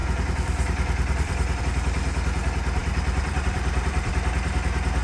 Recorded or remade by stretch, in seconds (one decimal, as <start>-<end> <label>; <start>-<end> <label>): 0.0-1.6 remade; 1.6-2.8 recorded; 2.8-4.1 remade; 4.1-5.0 recorded